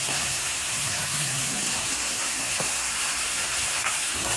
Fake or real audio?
fake